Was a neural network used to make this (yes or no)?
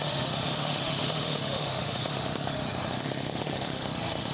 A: yes